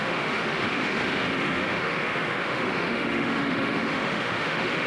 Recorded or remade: remade